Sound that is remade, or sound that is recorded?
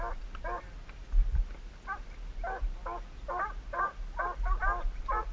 recorded